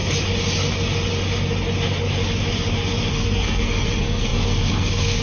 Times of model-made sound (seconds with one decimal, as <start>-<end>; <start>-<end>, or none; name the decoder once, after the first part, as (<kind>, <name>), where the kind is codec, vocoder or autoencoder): 3.1-5.2 (codec, SNAC)